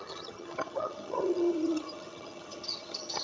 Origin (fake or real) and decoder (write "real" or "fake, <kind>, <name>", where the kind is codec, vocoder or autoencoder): fake, vocoder, HiFi-GAN